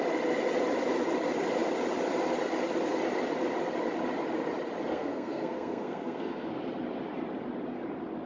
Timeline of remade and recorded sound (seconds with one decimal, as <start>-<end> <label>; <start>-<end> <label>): 0.0-4.9 recorded; 4.9-6.5 remade; 6.5-8.3 recorded